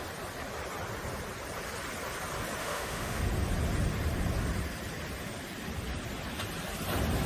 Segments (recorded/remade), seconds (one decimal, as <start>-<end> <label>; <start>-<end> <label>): 0.0-2.6 recorded; 2.6-3.2 remade; 3.2-7.3 recorded